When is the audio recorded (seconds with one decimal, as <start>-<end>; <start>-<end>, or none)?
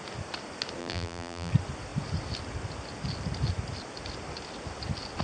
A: 0.0-0.8; 1.5-5.2